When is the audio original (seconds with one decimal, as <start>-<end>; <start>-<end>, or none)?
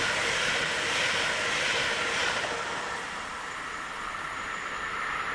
0.0-5.3